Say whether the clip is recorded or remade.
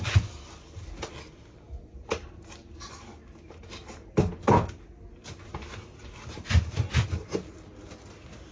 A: recorded